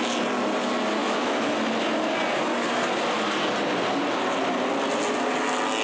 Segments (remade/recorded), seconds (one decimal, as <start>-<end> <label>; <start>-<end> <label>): 0.0-1.0 recorded; 1.0-1.5 remade; 1.5-5.8 recorded